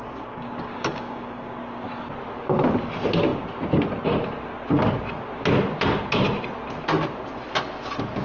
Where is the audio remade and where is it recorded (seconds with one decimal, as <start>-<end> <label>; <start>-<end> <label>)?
0.0-1.6 remade; 1.6-8.2 recorded